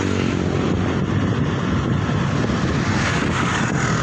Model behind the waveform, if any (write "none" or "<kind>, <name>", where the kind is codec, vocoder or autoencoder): none